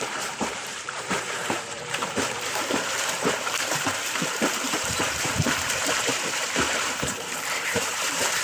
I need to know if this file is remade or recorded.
remade